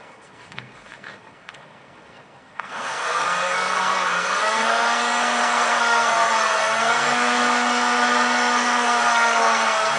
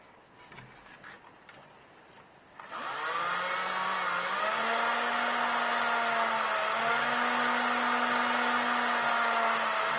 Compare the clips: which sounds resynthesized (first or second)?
first